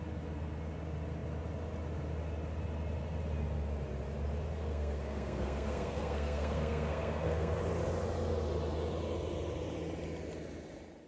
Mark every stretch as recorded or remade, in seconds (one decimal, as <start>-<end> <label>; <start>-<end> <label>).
0.0-4.7 recorded; 4.7-7.6 remade; 7.6-11.1 recorded